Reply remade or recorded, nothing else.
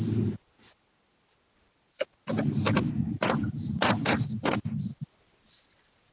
recorded